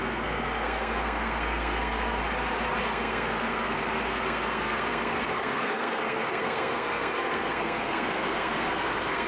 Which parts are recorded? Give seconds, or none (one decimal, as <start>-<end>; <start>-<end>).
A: 2.2-2.8